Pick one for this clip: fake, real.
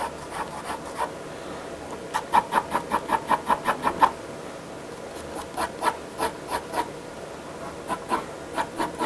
real